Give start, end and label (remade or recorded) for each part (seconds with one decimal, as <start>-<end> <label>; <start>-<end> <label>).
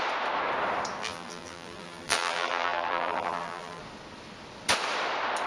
0.0-1.0 recorded; 1.0-3.8 remade; 3.8-5.5 recorded